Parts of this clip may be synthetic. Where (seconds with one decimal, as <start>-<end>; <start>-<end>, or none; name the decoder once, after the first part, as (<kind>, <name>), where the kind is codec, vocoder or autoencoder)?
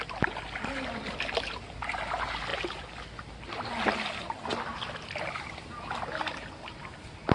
none